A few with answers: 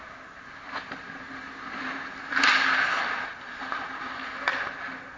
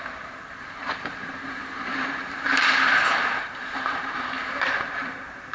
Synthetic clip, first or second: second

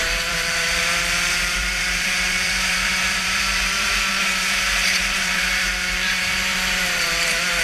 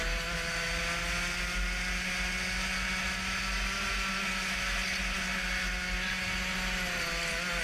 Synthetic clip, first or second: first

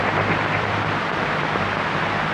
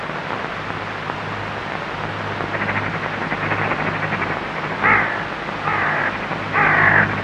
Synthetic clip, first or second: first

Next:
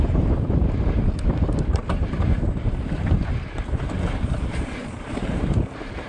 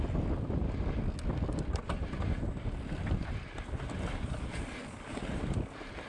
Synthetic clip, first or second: first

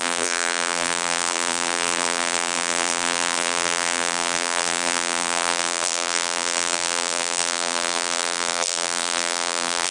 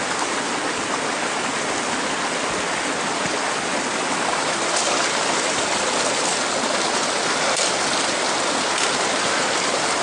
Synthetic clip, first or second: first